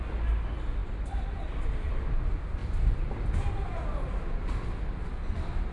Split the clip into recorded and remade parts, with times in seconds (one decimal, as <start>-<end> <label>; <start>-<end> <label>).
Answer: 0.0-0.8 recorded; 0.8-2.0 remade; 2.0-5.7 recorded